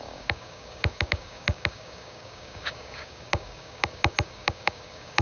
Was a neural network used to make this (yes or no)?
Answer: yes